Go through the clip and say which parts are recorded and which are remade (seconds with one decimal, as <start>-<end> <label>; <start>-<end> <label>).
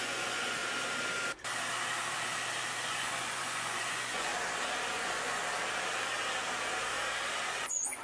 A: 0.0-0.6 remade; 0.6-2.9 recorded; 2.9-4.3 remade; 4.3-4.9 recorded; 4.9-5.4 remade; 5.4-7.6 recorded; 7.6-8.0 remade